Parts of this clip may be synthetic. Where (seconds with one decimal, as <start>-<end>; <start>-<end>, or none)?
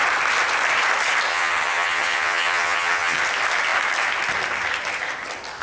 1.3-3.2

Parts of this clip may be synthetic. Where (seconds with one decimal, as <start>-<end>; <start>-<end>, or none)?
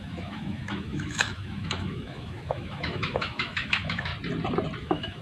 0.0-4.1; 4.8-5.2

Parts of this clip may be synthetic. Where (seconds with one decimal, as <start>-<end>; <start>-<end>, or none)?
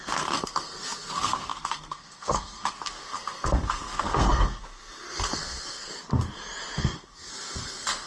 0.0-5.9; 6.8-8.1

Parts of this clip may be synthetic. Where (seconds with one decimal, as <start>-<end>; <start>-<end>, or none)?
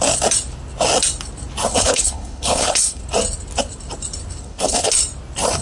1.7-3.0; 4.4-4.9